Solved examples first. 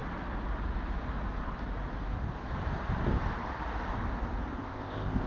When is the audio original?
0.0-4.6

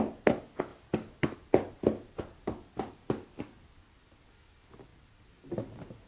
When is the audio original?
0.0-6.1

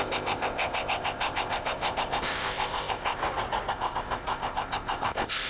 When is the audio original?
3.2-3.7

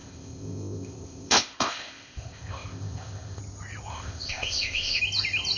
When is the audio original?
3.4-3.9; 5.0-5.6